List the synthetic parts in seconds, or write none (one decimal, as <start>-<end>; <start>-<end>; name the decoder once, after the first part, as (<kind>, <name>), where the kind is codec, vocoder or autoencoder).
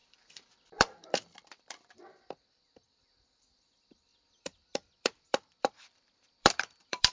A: 0.0-7.1 (vocoder, BigVGAN v2)